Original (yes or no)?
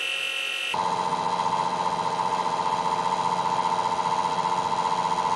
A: yes